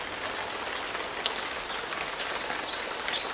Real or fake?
real